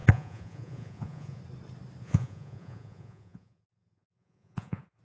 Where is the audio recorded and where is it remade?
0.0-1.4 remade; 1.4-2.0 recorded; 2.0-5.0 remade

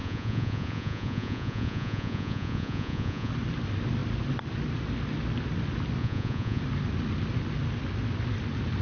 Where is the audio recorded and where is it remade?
0.0-3.3 remade; 3.3-6.0 recorded; 6.0-6.6 remade; 6.6-8.8 recorded

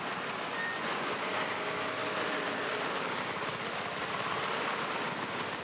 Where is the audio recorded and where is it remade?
0.0-0.5 recorded; 0.5-1.3 remade; 1.3-5.6 recorded

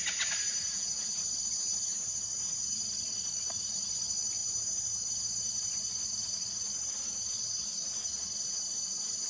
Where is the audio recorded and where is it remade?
0.0-0.6 recorded; 0.6-1.2 remade; 1.2-9.3 recorded